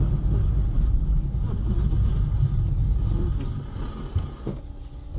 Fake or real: real